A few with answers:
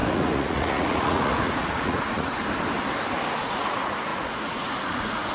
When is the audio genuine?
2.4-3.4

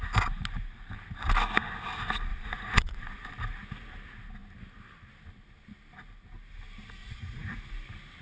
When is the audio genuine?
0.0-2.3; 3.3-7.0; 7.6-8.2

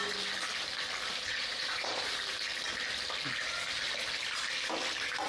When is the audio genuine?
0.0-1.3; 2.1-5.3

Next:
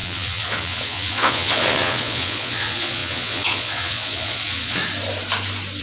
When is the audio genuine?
4.8-5.8